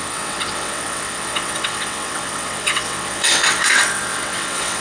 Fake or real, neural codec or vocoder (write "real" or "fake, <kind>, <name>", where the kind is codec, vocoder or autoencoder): fake, vocoder, WaveNeXt